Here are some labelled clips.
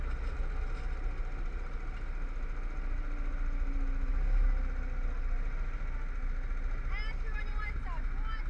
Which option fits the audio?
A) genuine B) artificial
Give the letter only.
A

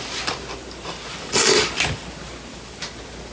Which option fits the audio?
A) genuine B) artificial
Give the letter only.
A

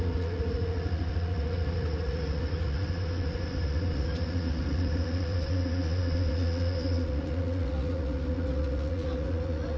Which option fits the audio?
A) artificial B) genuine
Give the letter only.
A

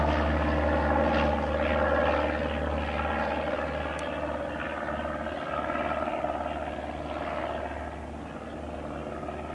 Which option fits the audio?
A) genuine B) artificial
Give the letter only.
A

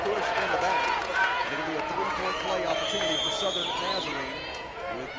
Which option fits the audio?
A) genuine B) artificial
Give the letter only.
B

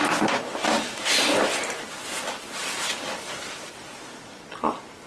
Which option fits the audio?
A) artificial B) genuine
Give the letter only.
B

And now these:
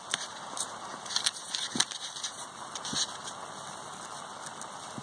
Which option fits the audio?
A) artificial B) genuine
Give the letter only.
B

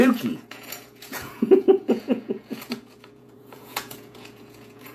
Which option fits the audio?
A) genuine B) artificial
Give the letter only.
B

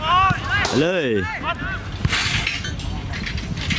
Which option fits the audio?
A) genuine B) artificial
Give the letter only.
A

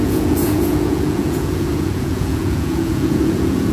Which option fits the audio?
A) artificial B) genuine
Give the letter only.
A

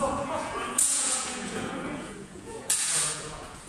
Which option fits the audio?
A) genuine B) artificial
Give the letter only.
B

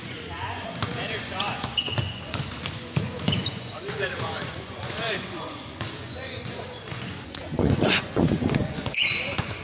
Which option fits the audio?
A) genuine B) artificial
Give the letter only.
B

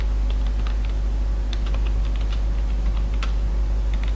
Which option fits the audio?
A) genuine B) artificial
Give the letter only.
A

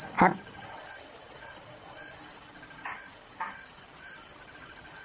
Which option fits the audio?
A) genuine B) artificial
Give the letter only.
A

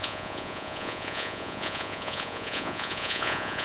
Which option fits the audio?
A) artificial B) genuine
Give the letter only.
A